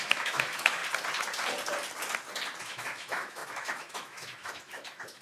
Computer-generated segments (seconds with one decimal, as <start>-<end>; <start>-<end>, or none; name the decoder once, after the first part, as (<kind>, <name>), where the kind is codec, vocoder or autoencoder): 0.0-0.8 (autoencoder, DAC-VAE); 2.6-5.2